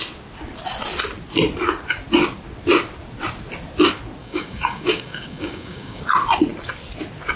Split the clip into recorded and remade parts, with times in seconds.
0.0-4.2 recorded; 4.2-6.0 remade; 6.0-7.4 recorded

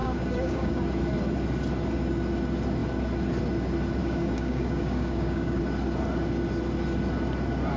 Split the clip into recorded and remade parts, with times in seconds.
0.0-0.7 remade; 0.7-4.0 recorded; 4.0-5.6 remade; 5.6-7.8 recorded

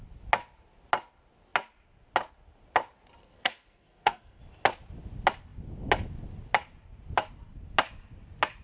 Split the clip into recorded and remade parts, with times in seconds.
0.0-3.2 recorded; 3.2-4.4 remade; 4.4-8.6 recorded

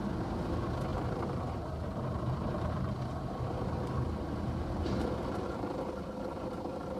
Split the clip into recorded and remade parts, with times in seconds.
0.0-0.9 recorded; 0.9-3.0 remade; 3.0-7.0 recorded

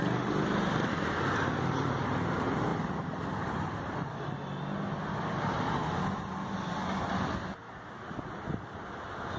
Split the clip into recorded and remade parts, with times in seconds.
0.0-2.7 recorded; 2.7-4.1 remade; 4.1-5.8 recorded; 5.8-6.7 remade; 6.7-9.4 recorded